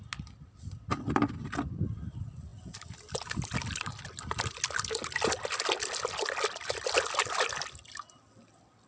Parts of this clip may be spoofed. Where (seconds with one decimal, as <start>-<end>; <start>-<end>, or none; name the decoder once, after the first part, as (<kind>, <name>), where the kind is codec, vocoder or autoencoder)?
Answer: none